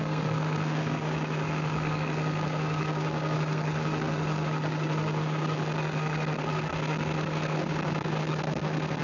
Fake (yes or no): yes